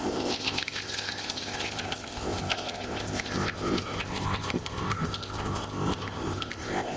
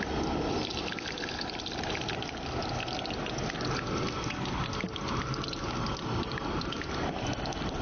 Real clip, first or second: second